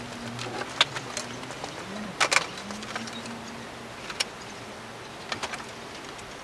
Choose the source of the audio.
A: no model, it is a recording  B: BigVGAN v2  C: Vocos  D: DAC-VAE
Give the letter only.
A